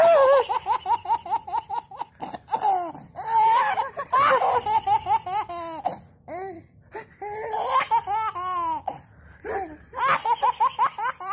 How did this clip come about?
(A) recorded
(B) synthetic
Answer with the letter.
A